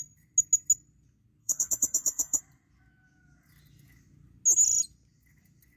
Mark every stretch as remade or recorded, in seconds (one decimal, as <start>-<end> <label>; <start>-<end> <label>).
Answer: 0.0-1.4 recorded; 1.4-2.4 remade; 2.4-5.8 recorded

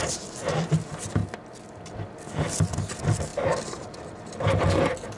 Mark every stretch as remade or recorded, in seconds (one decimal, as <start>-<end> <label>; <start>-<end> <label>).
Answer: 0.0-5.2 recorded

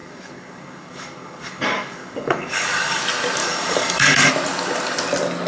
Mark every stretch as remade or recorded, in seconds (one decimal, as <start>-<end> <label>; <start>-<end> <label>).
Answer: 0.0-3.0 remade; 3.0-3.4 recorded; 3.4-4.3 remade; 4.3-5.5 recorded

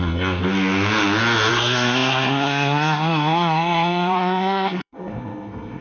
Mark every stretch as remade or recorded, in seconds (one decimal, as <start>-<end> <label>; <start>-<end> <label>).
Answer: 0.0-0.4 remade; 0.4-1.5 recorded; 1.5-5.8 remade